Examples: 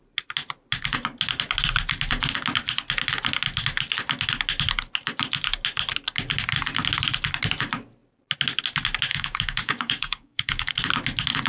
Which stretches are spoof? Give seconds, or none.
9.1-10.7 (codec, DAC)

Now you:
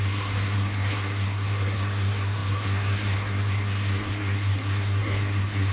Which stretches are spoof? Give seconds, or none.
0.0-5.7 (codec, SNAC)

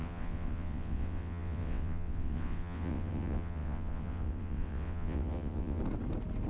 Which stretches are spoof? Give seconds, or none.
0.0-5.8 (vocoder, WaveNeXt)